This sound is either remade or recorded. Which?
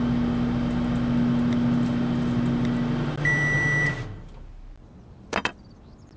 recorded